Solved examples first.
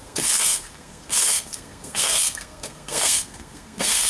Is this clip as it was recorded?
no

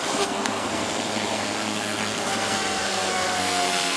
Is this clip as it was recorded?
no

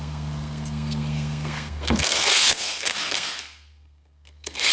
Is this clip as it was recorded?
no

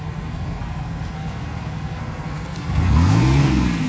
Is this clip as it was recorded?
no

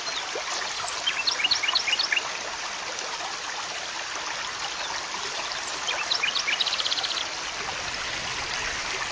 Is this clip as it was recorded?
yes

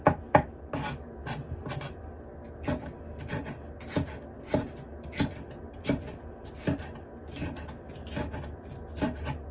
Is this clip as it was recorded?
yes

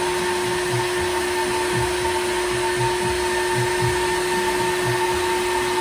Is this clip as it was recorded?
yes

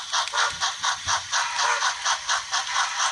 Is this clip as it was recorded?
yes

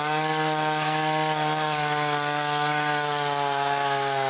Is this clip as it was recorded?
no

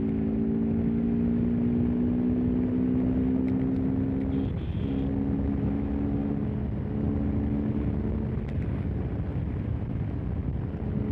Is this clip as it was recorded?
yes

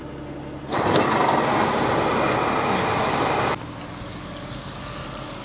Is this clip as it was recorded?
yes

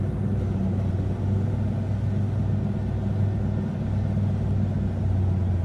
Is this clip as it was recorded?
yes